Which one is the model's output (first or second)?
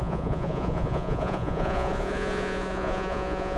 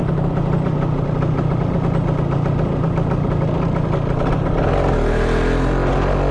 first